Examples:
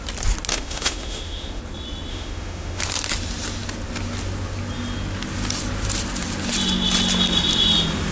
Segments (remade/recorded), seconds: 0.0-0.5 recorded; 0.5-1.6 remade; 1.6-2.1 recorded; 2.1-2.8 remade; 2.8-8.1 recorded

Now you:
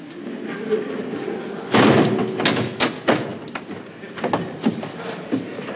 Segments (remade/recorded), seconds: 0.0-2.2 recorded; 2.2-2.8 remade; 2.8-5.8 recorded

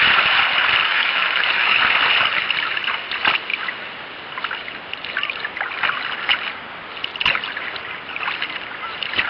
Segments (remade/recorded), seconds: 0.0-0.8 recorded; 0.8-1.8 remade; 1.8-9.3 recorded

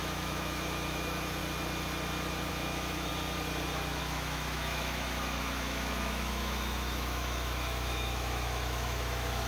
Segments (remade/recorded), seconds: 0.0-1.4 remade; 1.4-2.5 recorded; 2.5-3.1 remade; 3.1-4.0 recorded; 4.0-9.5 remade

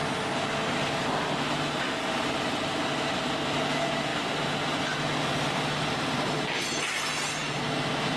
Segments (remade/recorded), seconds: 0.0-8.2 recorded

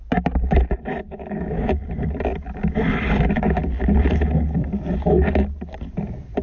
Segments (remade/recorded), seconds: 0.0-0.9 recorded; 0.9-1.8 remade; 1.8-6.4 recorded